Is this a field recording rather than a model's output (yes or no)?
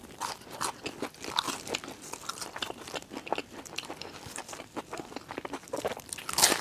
yes